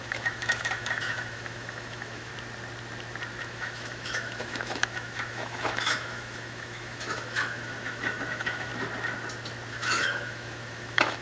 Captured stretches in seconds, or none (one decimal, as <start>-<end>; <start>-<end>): 2.3-3.4; 8.7-9.7